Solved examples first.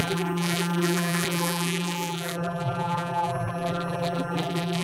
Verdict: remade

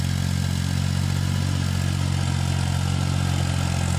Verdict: recorded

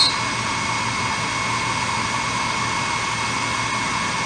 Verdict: recorded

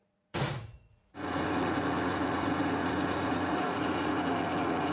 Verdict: remade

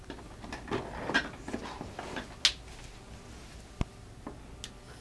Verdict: recorded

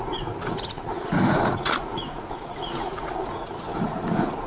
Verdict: remade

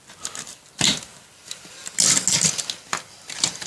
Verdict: recorded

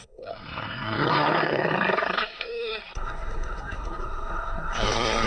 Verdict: remade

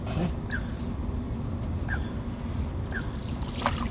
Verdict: recorded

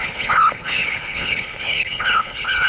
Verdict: remade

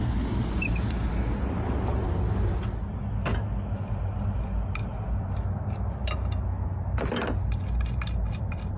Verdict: recorded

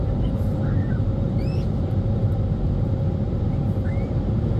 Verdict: remade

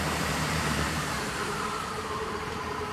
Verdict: remade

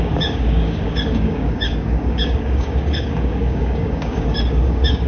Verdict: remade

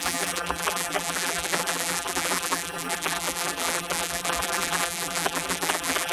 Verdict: remade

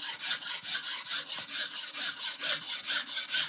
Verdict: recorded